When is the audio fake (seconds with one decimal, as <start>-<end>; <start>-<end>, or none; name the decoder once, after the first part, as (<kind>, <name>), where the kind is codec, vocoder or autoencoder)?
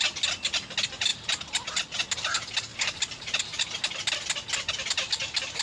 2.7-3.6 (vocoder, BigVGAN v2)